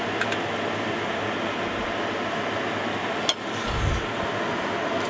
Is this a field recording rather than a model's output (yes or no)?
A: yes